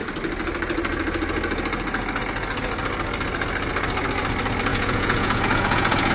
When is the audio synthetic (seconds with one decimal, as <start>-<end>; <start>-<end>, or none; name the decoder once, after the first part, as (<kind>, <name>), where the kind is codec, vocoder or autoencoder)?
4.7-6.1 (vocoder, Vocos)